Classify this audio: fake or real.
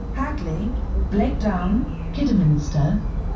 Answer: real